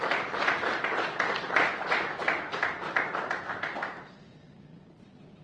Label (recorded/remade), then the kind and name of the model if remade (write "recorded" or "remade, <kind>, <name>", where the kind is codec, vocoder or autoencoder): recorded